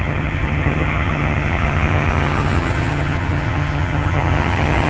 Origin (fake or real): fake